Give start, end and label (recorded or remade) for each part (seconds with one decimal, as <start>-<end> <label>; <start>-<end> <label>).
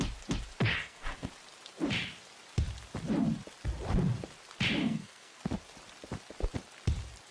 0.0-0.7 recorded; 0.7-1.3 remade; 1.3-4.8 recorded; 4.8-5.4 remade; 5.4-7.3 recorded